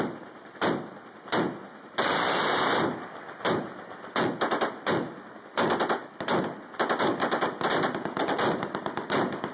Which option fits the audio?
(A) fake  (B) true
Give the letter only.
B